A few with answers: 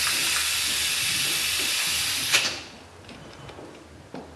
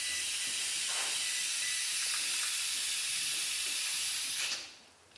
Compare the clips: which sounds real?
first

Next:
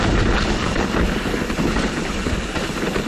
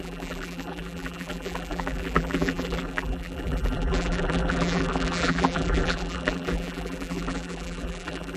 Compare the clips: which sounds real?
first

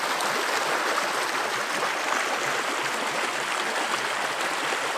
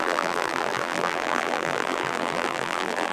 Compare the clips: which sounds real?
first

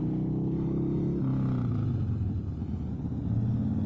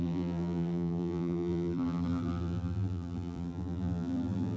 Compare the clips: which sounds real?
first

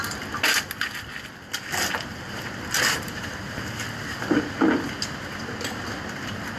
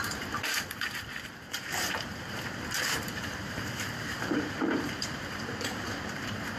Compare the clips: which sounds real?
first